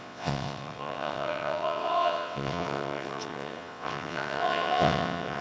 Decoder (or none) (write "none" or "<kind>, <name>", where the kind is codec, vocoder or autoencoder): vocoder, WaveNeXt